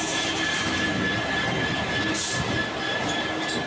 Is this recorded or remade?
recorded